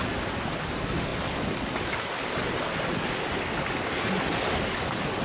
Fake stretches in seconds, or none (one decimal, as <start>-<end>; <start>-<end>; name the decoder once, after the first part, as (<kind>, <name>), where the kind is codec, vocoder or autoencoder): none